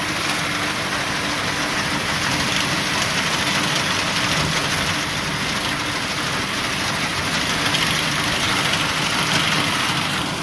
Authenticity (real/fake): real